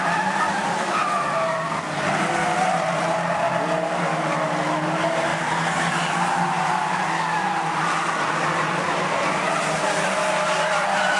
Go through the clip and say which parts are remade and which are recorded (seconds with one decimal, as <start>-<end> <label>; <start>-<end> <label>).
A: 0.0-11.2 recorded